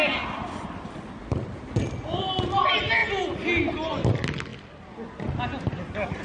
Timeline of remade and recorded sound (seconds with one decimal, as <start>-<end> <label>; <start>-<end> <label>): 0.0-1.2 recorded; 1.2-1.8 remade; 1.8-6.2 recorded